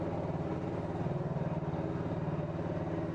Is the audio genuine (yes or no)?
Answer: yes